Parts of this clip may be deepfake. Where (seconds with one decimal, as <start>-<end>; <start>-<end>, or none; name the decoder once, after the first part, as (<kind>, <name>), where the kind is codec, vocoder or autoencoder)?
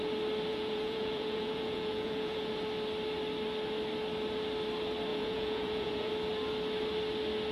0.5-2.5 (vocoder, Vocos); 5.1-6.1